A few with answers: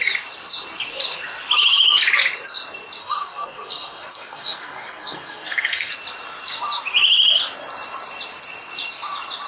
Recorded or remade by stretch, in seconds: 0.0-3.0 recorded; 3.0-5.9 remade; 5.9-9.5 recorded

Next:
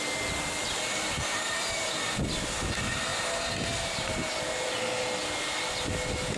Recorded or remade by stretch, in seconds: 0.0-6.4 recorded

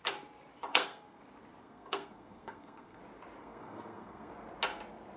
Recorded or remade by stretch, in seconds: 0.0-0.7 recorded; 0.7-1.2 remade; 1.2-1.6 recorded; 1.6-3.0 remade; 3.0-3.4 recorded; 3.4-4.3 remade; 4.3-5.2 recorded